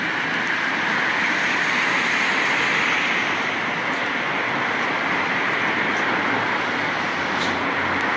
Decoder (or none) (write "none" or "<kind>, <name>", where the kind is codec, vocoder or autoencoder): none